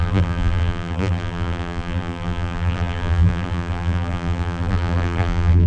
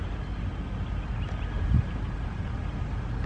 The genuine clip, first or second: second